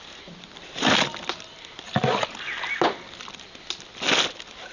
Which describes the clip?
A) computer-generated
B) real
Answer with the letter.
B